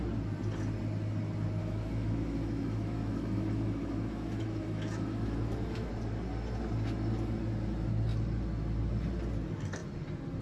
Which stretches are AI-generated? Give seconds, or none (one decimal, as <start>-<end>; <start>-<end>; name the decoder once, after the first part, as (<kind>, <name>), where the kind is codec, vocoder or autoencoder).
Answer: 1.6-5.9 (autoencoder, DAC-VAE)